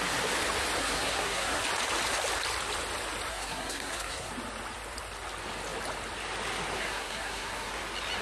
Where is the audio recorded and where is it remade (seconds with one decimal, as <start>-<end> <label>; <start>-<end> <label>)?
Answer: 0.0-0.8 recorded; 0.8-1.6 remade; 1.6-3.3 recorded; 3.3-4.3 remade; 4.3-6.8 recorded; 6.8-7.7 remade; 7.7-8.2 recorded